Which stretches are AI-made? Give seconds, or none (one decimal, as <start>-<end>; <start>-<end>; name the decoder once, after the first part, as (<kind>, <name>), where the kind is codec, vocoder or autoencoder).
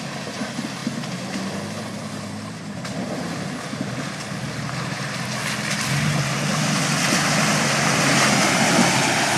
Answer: none